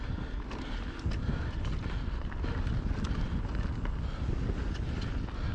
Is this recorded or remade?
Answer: recorded